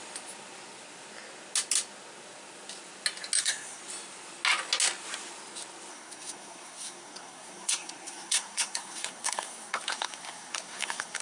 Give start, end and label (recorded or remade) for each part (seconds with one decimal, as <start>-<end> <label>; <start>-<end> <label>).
0.0-3.4 recorded; 3.4-3.8 remade; 3.8-5.9 recorded; 5.9-11.2 remade